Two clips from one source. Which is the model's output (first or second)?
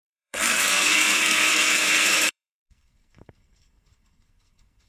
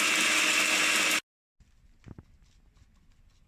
first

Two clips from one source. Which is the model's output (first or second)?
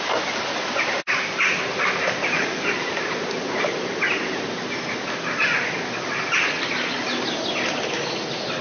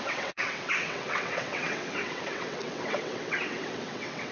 second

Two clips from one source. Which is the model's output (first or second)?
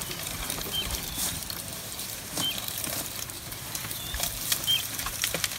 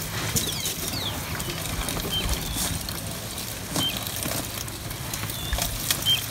first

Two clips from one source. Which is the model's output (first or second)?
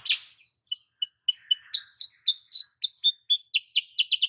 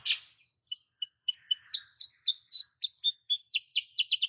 second